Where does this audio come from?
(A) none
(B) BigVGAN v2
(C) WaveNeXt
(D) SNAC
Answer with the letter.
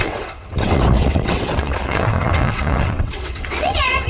C